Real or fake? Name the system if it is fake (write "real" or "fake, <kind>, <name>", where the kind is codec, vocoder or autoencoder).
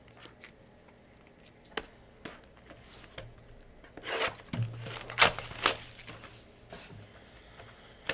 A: real